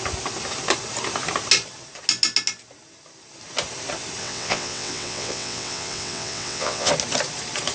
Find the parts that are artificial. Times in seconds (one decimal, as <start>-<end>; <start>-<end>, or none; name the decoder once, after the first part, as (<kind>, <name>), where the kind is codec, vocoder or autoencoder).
4.2-6.9 (vocoder, WaveNeXt)